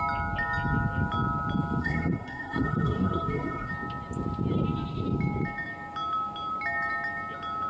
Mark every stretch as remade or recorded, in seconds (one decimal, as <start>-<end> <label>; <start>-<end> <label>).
0.0-1.8 recorded; 1.8-3.7 remade; 3.7-7.7 recorded